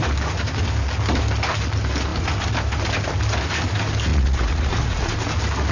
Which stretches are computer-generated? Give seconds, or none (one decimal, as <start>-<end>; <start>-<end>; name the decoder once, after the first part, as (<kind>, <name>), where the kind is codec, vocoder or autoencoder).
4.1-5.1 (vocoder, Vocos)